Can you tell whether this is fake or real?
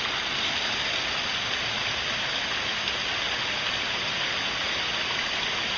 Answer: real